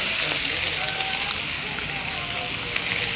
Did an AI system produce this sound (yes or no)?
no